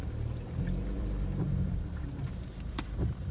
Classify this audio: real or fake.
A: fake